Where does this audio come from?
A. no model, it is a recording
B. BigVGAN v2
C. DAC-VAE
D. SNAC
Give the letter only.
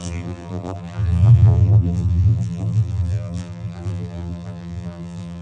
B